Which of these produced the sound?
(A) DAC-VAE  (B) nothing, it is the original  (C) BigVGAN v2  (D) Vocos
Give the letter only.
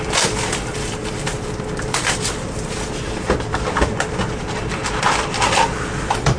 C